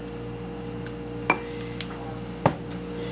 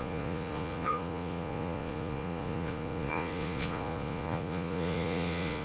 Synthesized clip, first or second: second